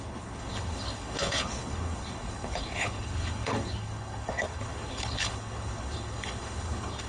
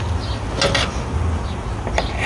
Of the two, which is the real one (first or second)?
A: second